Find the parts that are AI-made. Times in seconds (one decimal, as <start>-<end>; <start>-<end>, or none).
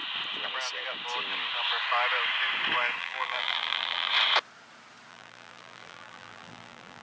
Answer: 3.0-4.1; 5.1-7.0